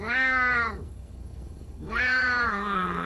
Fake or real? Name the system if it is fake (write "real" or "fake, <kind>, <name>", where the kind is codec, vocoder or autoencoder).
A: fake, codec, SNAC